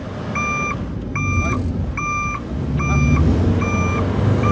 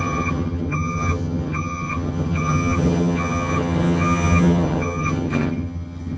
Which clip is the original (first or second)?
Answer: first